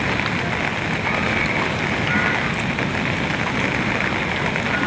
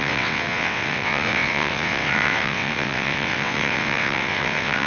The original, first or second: first